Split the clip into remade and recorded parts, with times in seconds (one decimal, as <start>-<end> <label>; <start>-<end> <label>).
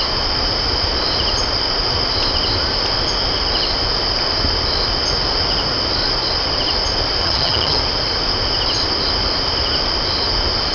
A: 0.0-7.2 recorded; 7.2-7.8 remade; 7.8-10.7 recorded